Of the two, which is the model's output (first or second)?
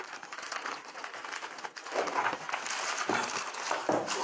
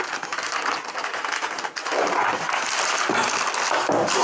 first